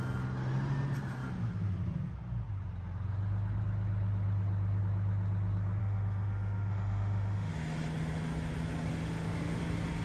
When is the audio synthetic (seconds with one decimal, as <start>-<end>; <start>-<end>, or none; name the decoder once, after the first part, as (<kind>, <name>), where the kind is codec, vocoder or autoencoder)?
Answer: 5.8-7.5 (autoencoder, DAC-VAE); 8.9-9.6